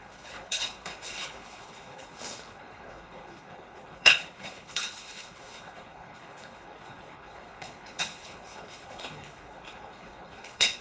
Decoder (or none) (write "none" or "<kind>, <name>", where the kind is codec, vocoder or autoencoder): codec, HILCodec